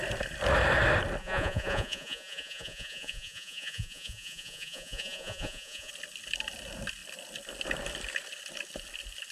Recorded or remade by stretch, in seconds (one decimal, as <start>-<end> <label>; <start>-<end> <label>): 0.0-1.2 recorded; 1.2-5.9 remade; 5.9-9.3 recorded